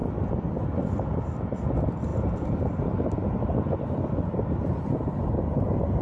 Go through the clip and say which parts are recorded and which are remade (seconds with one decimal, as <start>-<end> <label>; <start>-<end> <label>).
0.0-6.0 recorded